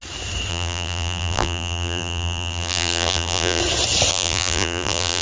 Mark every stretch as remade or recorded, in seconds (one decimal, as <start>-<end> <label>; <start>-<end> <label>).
0.0-0.5 recorded; 0.5-3.6 remade; 3.6-4.1 recorded; 4.1-5.2 remade